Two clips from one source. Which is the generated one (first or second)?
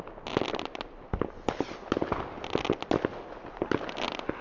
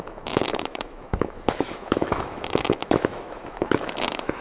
second